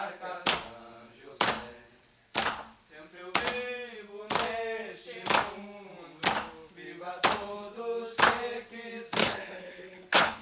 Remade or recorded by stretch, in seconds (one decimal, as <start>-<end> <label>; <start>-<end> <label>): 0.0-9.2 recorded; 9.2-10.4 remade